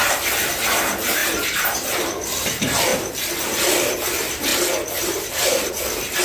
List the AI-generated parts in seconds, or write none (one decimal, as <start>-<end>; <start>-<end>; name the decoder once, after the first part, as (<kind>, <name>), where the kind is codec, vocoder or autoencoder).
none

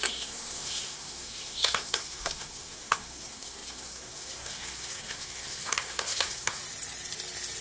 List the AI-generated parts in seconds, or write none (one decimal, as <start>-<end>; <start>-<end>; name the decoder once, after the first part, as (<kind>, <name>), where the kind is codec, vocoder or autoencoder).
0.0-6.6 (codec, SNAC)

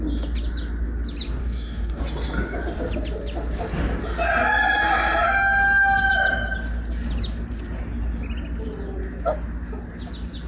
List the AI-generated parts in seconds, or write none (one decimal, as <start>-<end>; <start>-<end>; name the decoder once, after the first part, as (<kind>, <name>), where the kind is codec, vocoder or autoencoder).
1.4-2.0 (codec, DAC)

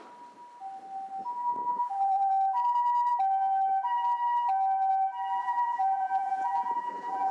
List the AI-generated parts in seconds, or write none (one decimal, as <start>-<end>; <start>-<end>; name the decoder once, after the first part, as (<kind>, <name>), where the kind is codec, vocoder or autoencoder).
1.7-2.3 (vocoder, BigVGAN v2); 5.4-7.3

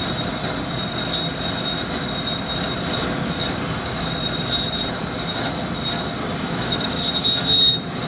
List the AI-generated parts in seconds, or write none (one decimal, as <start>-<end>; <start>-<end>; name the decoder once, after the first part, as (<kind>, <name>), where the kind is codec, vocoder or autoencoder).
2.9-4.1 (codec, DAC); 6.2-7.0

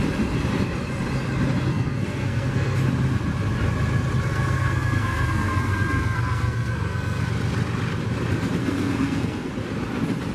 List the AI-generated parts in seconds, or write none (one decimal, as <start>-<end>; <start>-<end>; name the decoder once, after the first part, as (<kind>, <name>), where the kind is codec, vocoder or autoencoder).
1.7-2.8 (codec, SNAC); 4.3-7.2; 8.6-9.5

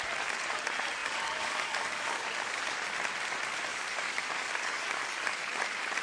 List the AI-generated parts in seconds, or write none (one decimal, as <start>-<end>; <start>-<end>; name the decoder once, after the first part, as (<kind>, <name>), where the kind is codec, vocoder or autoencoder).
1.0-2.6 (codec, DAC); 3.7-5.4

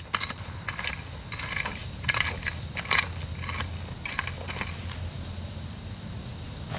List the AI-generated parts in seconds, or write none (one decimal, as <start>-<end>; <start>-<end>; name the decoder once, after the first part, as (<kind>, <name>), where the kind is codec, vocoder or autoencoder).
none